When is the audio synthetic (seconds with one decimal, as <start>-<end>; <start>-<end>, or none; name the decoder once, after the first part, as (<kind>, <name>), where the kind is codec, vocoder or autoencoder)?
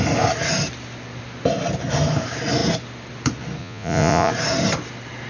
3.6-4.3 (vocoder, Vocos)